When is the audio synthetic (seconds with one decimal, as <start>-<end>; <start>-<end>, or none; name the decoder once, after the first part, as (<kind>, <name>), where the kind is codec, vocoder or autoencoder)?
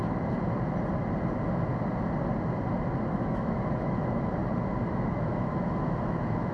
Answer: 3.1-4.4 (autoencoder, DAC-VAE); 4.9-6.5